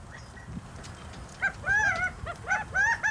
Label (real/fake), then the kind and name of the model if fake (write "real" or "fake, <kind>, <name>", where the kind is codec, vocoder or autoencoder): real